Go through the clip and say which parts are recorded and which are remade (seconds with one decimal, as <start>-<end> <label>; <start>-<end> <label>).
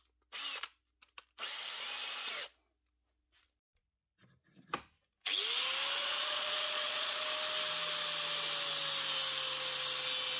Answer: 0.0-6.0 recorded; 6.0-7.2 remade; 7.2-10.4 recorded